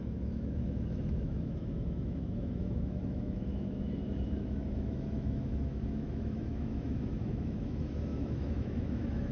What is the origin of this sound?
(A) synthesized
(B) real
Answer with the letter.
A